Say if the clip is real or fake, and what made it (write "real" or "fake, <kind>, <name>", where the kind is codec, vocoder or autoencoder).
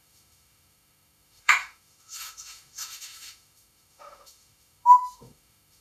fake, autoencoder, DAC-VAE